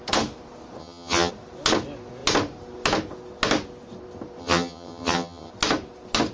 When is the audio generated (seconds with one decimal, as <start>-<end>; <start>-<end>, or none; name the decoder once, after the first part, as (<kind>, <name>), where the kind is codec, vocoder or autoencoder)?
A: 0.8-1.3 (vocoder, HiFi-GAN); 4.4-5.5